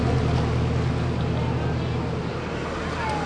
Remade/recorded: recorded